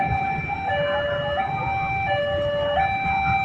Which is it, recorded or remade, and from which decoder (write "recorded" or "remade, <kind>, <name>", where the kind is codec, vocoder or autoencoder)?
recorded